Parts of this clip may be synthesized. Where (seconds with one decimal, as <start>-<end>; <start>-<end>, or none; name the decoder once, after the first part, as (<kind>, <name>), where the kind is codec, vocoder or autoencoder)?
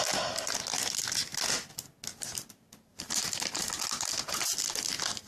none